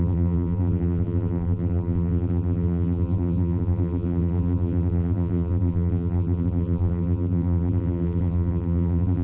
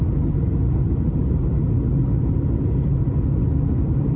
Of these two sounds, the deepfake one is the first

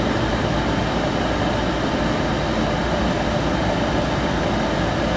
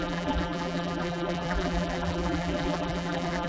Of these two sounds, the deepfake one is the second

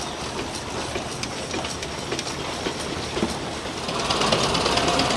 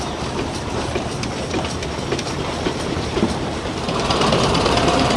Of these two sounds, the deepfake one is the second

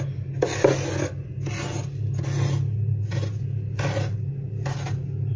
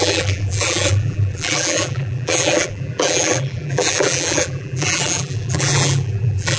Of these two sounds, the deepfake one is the second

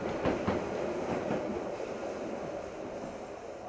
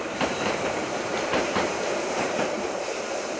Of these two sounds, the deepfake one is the second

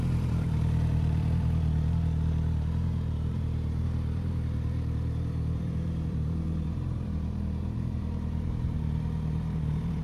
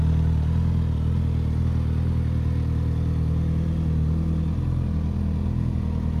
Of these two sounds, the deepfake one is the first